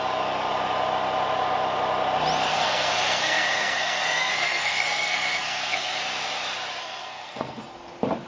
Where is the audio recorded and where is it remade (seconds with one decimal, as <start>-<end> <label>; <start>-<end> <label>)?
0.0-2.5 recorded; 2.5-6.0 remade; 6.0-6.8 recorded; 6.8-7.6 remade; 7.6-8.3 recorded